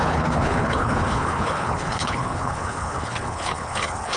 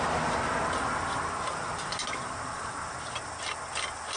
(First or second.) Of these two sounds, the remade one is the first